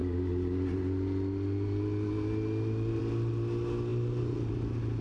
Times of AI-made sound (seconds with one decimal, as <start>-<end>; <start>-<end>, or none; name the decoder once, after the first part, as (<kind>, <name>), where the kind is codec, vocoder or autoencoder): none